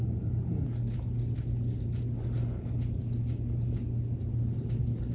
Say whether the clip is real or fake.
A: real